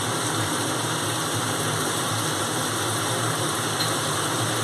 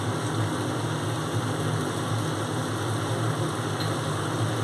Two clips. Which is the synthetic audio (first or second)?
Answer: first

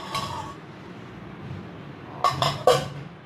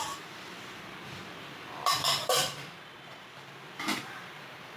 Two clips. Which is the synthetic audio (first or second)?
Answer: second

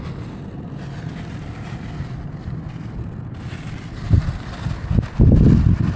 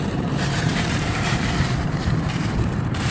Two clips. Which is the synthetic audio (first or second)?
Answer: second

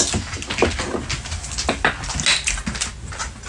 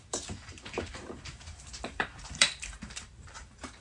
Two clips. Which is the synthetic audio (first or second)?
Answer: second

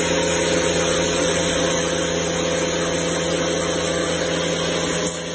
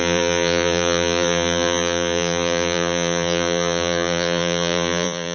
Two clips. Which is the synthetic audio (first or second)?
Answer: second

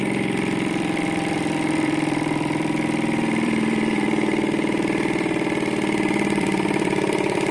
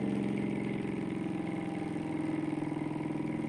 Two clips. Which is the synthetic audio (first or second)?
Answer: first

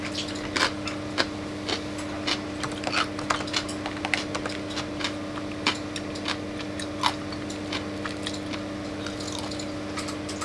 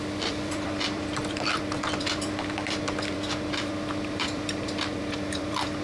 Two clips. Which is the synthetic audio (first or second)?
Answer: second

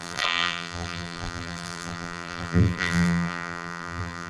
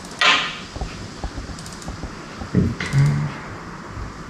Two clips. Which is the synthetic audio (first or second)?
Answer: first